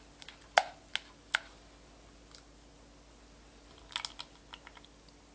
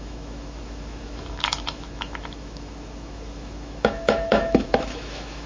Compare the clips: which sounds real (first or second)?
first